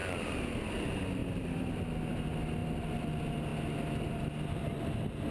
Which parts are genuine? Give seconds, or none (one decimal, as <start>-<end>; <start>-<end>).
0.0-1.2; 1.8-2.6; 3.1-5.3